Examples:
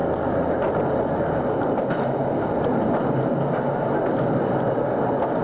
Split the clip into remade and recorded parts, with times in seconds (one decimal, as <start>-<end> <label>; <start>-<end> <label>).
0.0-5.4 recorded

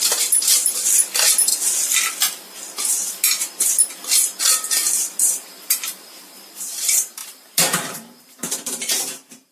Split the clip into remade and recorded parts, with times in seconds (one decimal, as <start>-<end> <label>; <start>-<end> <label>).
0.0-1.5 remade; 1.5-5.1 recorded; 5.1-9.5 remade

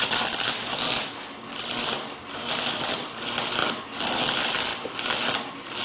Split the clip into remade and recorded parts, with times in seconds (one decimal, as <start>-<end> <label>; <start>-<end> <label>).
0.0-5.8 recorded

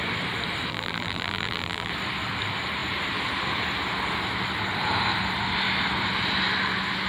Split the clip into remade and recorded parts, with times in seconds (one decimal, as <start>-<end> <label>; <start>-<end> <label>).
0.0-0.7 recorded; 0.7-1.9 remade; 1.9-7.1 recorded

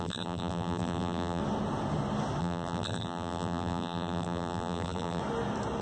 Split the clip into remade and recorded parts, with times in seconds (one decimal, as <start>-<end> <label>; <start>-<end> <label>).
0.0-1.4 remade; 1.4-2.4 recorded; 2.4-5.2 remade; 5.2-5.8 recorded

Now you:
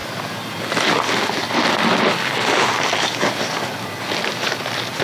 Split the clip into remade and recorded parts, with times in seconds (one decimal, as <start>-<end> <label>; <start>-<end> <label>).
0.0-5.0 recorded

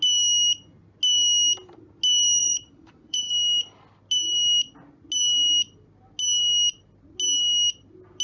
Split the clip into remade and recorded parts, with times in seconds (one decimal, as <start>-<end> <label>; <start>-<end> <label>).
0.0-2.4 recorded; 2.4-3.3 remade; 3.3-8.2 recorded